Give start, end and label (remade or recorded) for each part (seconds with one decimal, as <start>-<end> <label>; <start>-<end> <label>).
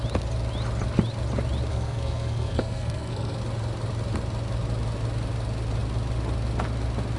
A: 0.0-1.7 recorded; 1.7-3.4 remade; 3.4-7.2 recorded